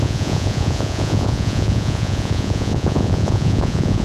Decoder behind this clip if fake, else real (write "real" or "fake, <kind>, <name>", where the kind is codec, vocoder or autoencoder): fake, vocoder, Vocos